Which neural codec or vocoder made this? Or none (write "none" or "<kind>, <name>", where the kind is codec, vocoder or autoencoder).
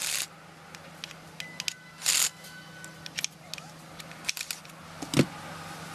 none